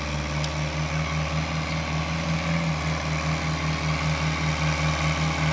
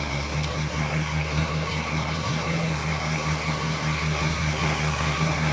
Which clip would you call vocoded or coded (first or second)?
second